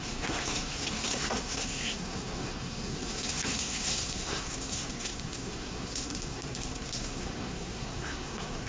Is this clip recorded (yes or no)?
no